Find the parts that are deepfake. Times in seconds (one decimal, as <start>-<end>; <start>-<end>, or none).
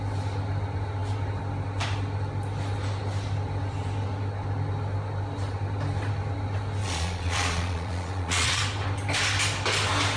6.8-8.6